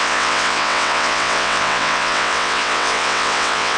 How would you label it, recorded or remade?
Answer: remade